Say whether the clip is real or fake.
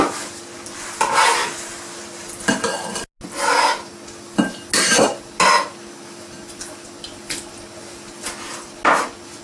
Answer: real